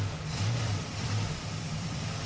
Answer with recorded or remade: remade